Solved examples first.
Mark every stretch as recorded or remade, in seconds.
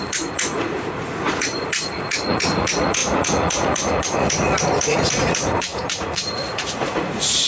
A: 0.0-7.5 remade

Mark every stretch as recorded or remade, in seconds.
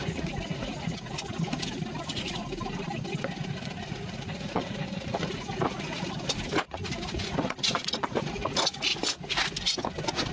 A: 0.0-2.4 remade; 2.4-3.8 recorded; 3.8-8.9 remade; 8.9-10.3 recorded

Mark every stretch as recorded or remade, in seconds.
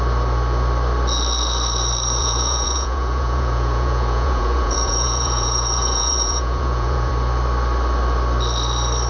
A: 0.0-2.2 recorded; 2.2-7.1 remade; 7.1-9.1 recorded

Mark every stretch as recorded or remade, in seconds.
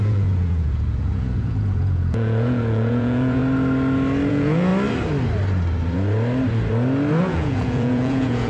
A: 0.0-3.4 remade; 3.4-4.3 recorded; 4.3-4.7 remade; 4.7-7.2 recorded; 7.2-8.5 remade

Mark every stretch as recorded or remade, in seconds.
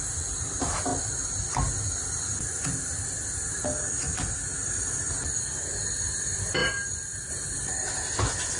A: 0.0-8.6 recorded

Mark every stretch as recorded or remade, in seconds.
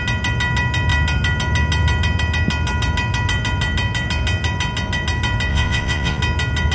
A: 0.0-5.5 recorded; 5.5-6.2 remade; 6.2-6.7 recorded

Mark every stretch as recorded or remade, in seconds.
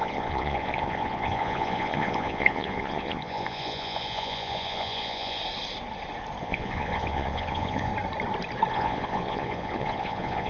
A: 0.0-5.4 remade; 5.4-6.4 recorded; 6.4-7.9 remade; 7.9-8.7 recorded; 8.7-10.5 remade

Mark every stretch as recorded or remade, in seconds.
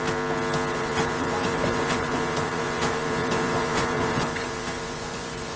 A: 0.0-0.7 recorded; 0.7-5.6 remade